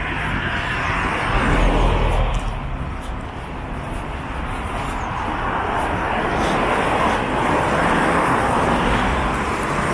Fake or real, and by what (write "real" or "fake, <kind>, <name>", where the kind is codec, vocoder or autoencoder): real